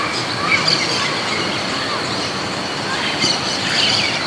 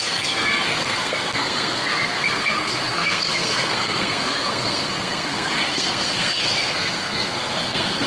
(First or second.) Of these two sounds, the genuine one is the first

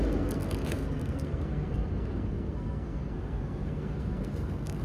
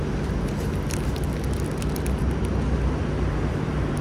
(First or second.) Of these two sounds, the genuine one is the second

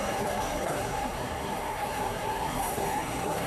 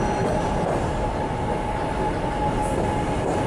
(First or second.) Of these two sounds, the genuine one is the second